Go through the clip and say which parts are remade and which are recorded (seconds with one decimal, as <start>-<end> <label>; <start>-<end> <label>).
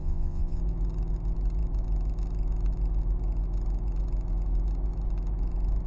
0.0-0.6 remade; 0.6-5.9 recorded